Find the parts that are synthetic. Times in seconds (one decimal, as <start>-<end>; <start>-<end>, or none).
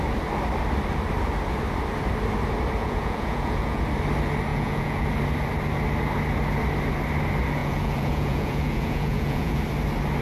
2.8-3.8; 4.5-5.1; 7.6-9.6